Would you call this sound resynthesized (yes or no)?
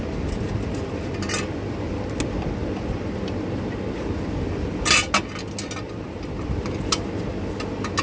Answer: no